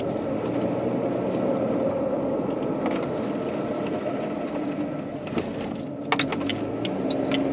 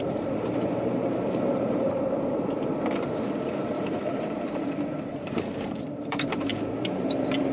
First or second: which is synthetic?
second